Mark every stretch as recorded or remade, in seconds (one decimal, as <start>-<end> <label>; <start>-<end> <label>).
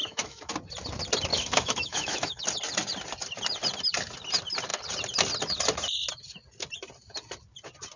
0.0-0.5 remade; 0.5-1.3 recorded; 1.3-2.4 remade; 2.4-8.0 recorded